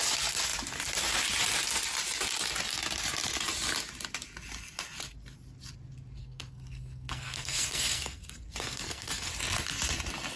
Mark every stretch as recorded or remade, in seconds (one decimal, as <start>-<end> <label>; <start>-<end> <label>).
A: 0.0-6.2 recorded; 6.2-9.3 remade; 9.3-10.4 recorded